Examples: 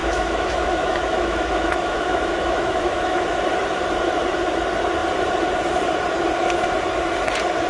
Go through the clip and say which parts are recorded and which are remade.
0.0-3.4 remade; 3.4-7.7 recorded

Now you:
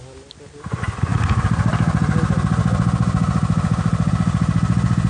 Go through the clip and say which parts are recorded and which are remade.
0.0-5.1 recorded

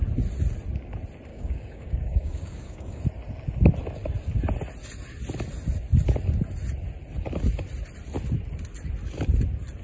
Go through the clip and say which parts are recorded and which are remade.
0.0-1.3 recorded; 1.3-3.0 remade; 3.0-9.8 recorded